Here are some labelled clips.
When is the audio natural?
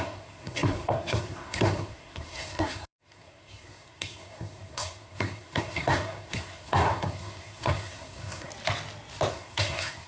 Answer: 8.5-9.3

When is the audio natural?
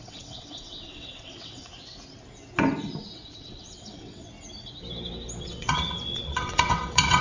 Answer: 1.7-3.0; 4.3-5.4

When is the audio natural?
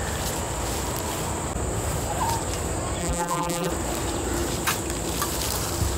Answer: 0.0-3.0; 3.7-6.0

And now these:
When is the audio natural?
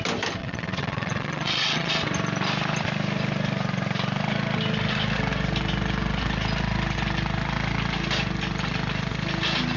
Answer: 0.0-0.4; 1.9-9.8